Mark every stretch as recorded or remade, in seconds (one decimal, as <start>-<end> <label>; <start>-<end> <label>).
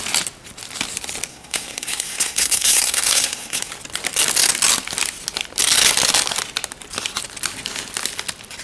0.0-1.3 recorded; 1.3-3.7 remade; 3.7-8.6 recorded